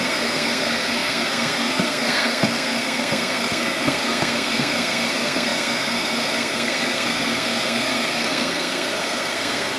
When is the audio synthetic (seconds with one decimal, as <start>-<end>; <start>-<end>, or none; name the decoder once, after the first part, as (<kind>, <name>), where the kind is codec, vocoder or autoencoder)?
0.0-9.8 (codec, SNAC)